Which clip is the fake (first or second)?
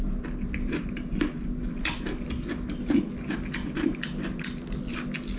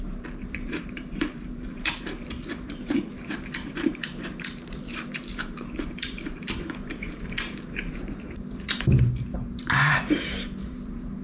second